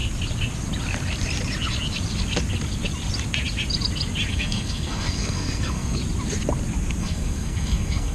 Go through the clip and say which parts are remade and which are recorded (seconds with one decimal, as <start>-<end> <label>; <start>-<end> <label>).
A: 0.0-4.3 recorded; 4.3-6.0 remade; 6.0-7.0 recorded; 7.0-8.1 remade